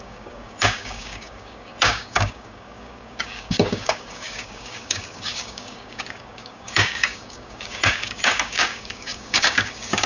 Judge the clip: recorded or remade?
remade